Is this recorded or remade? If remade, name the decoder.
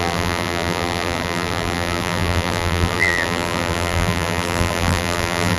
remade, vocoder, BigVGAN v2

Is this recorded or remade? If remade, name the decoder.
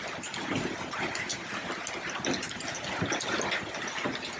recorded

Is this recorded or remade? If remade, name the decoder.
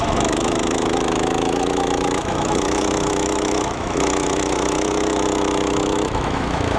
remade, autoencoder, DAC-VAE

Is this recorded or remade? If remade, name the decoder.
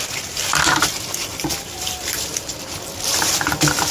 remade, vocoder, BigVGAN v2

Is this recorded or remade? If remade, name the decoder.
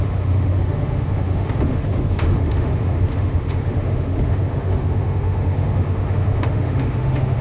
remade, autoencoder, DAC-VAE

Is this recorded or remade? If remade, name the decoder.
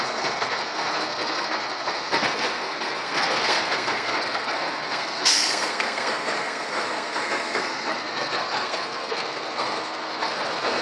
remade, codec, SNAC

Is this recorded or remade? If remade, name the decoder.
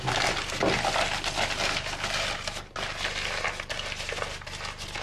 recorded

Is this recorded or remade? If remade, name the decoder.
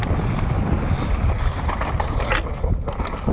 recorded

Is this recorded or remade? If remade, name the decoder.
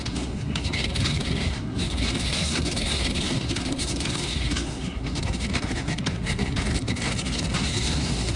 remade, codec, SNAC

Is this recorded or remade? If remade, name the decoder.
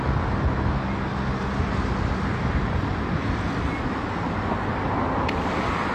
recorded